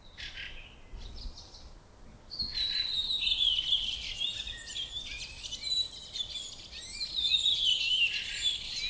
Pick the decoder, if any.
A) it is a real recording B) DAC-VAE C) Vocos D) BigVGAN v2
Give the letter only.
A